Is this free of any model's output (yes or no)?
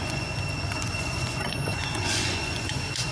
no